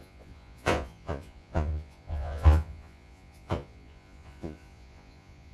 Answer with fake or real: fake